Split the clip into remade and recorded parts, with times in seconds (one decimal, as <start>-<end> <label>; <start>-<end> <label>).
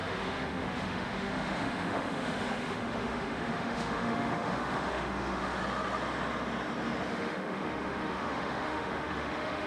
0.0-5.6 remade; 5.6-7.1 recorded; 7.1-9.7 remade